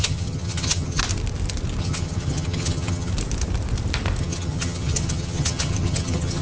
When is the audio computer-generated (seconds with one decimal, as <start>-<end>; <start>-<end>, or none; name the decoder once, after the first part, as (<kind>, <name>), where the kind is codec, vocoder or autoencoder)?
0.0-1.0 (vocoder, HiFi-GAN); 1.8-3.1; 4.2-6.4